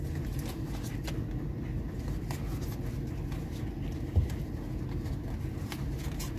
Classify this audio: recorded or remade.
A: recorded